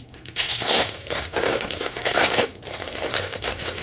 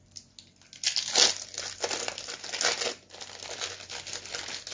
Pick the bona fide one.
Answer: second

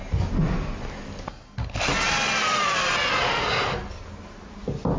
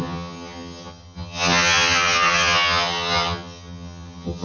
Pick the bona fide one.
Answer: first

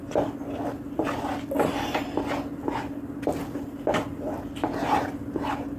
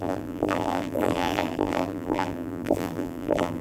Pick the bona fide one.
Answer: first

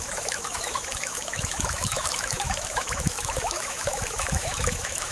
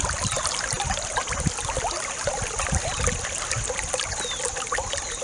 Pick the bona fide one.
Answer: second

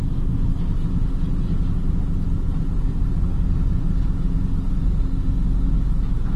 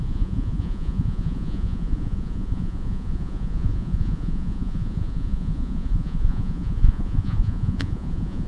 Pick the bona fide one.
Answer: first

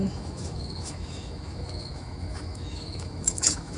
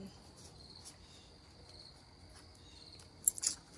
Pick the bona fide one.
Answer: second